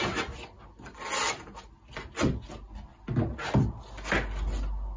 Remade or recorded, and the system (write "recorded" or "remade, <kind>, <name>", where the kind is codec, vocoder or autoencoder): recorded